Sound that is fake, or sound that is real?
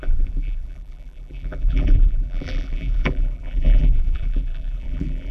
fake